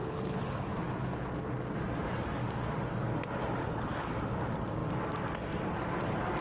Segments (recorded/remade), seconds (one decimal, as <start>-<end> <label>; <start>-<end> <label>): 0.0-0.7 remade; 0.7-3.6 recorded; 3.6-4.1 remade; 4.1-6.4 recorded